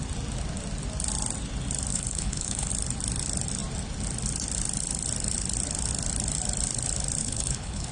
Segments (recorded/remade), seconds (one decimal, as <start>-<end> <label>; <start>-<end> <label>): 0.0-1.9 recorded; 1.9-2.7 remade; 2.7-7.2 recorded; 7.2-7.9 remade